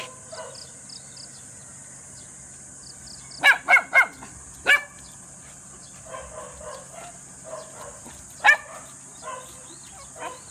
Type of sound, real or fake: real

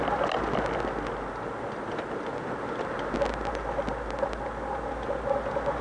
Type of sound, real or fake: real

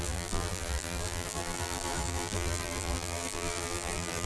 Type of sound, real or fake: fake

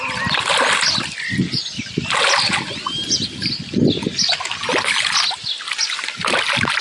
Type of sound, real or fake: real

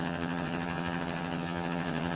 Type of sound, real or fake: fake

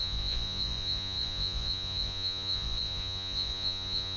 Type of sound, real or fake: fake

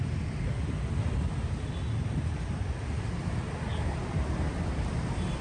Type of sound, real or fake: real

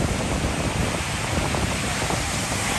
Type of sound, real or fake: real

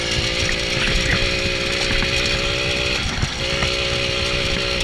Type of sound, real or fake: real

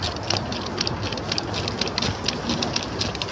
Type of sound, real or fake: real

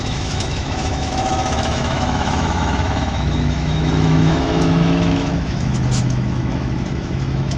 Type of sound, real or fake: fake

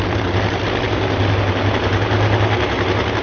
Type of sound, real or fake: real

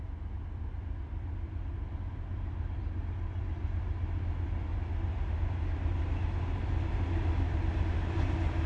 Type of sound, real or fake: real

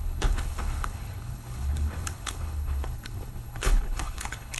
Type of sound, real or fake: fake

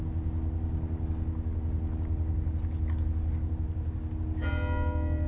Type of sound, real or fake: real